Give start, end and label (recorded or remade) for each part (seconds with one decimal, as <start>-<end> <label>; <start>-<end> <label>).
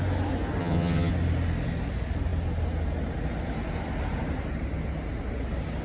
0.0-0.6 recorded; 0.6-1.1 remade; 1.1-5.8 recorded